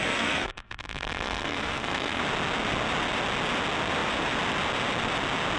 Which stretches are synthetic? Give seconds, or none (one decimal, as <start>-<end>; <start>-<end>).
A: 0.0-2.2